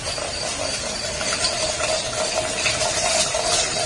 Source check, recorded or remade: recorded